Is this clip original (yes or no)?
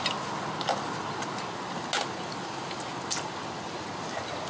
yes